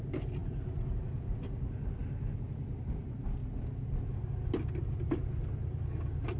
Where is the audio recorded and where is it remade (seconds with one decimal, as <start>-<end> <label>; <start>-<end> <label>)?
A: 0.0-6.4 recorded